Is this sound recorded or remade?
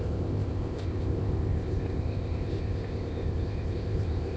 remade